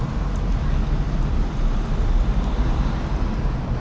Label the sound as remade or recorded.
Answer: recorded